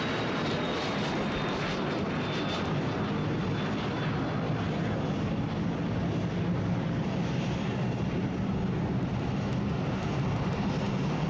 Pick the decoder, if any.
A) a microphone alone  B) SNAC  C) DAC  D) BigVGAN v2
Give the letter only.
A